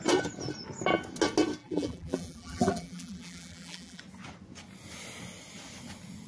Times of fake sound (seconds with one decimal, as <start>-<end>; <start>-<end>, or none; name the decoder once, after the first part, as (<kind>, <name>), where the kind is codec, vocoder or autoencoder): 1.6-4.0 (vocoder, BigVGAN v2)